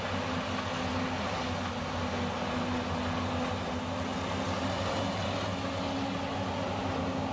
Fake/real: real